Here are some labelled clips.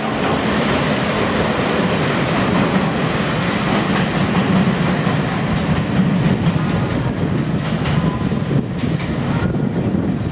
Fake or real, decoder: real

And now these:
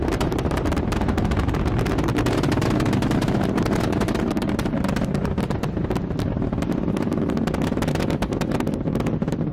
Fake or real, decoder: fake, vocoder, BigVGAN v2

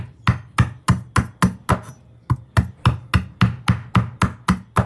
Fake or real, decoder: real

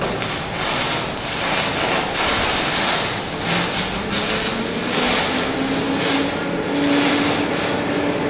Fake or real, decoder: real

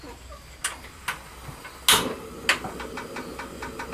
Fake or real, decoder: real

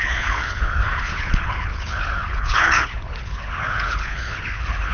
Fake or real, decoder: fake, codec, HILCodec